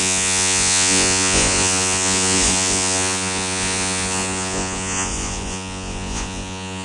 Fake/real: fake